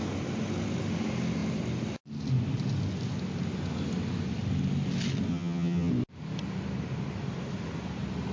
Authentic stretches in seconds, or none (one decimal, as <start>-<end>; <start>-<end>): 0.0-5.3; 5.9-8.3